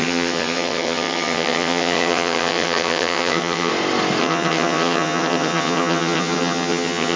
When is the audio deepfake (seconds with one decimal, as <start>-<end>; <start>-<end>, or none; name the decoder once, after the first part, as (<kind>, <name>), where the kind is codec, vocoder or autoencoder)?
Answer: 0.0-3.7 (vocoder, HiFi-GAN); 4.2-7.2